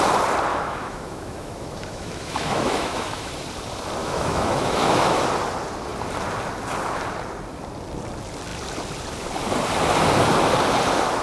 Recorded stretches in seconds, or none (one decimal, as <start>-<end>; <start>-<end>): 0.0-0.5; 3.3-4.0; 5.2-11.2